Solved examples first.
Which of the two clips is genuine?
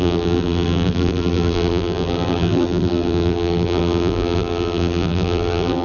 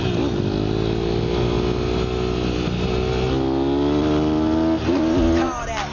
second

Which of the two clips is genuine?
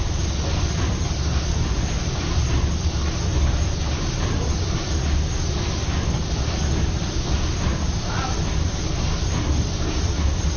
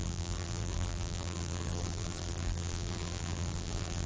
first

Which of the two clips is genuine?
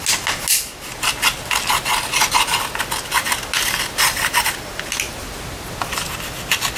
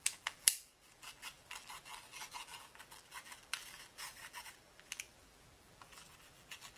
first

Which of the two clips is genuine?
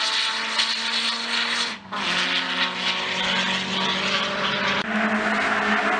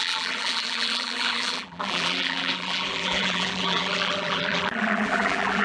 first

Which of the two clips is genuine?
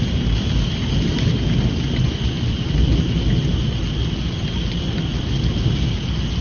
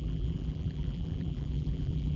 first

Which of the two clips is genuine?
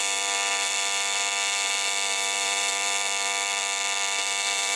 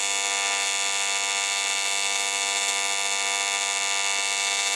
second